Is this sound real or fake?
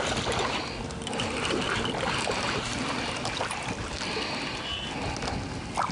real